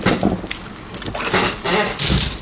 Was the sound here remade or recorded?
recorded